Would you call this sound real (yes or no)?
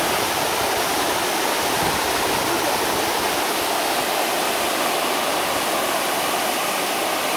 yes